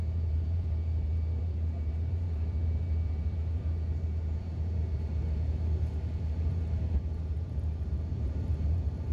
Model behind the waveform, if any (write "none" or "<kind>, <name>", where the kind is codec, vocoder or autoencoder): vocoder, BigVGAN v2